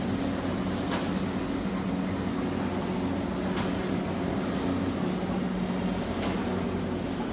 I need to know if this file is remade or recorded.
recorded